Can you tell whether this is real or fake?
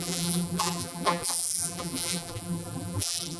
fake